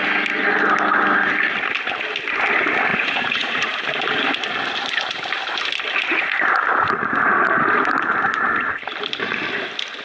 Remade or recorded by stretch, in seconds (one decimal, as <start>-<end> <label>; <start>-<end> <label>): 0.0-2.9 recorded; 2.9-3.8 remade; 3.8-10.0 recorded